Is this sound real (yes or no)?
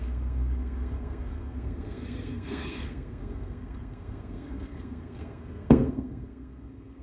no